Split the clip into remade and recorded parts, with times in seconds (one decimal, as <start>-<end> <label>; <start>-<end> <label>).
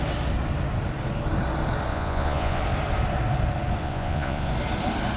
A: 0.0-1.9 recorded; 1.9-2.6 remade; 2.6-3.8 recorded; 3.8-4.5 remade; 4.5-5.2 recorded